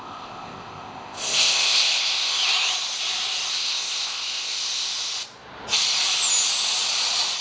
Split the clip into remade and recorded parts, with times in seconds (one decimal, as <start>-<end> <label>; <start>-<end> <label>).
0.0-2.4 remade; 2.4-3.5 recorded; 3.5-4.9 remade; 4.9-7.4 recorded